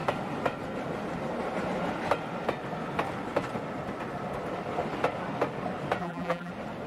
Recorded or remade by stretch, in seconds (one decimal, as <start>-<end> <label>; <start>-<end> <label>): 0.0-6.0 recorded; 6.0-6.5 remade; 6.5-6.9 recorded